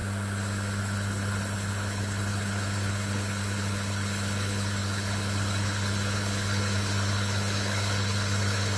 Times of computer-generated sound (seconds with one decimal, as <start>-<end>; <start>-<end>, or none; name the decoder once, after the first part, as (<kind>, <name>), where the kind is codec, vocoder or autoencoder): 0.8-8.8 (codec, HILCodec)